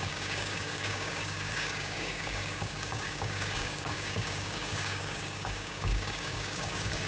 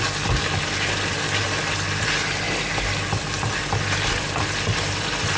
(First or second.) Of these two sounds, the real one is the second